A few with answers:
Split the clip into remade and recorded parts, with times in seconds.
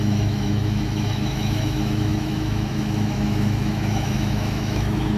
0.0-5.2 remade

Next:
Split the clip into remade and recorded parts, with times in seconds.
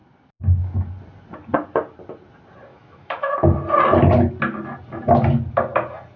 0.0-2.7 recorded; 2.7-3.3 remade; 3.3-6.2 recorded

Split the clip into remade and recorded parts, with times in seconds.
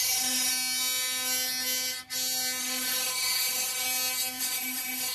0.0-0.5 remade; 0.5-2.6 recorded; 2.6-3.8 remade; 3.8-4.4 recorded; 4.4-5.1 remade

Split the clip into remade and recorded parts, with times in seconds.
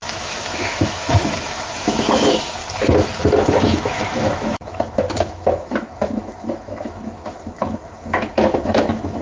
0.0-2.6 remade; 2.6-3.6 recorded; 3.6-9.2 remade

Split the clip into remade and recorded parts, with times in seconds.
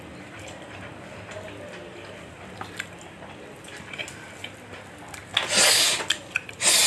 0.0-6.9 recorded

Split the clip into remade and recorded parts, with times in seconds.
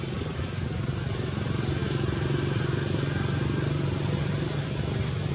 0.0-5.3 recorded